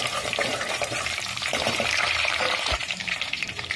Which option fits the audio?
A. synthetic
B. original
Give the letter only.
A